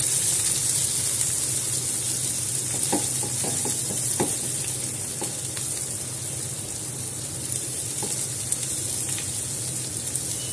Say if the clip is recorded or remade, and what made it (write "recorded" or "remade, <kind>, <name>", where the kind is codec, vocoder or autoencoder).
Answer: recorded